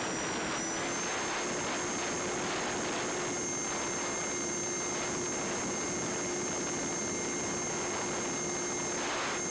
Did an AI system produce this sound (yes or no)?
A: no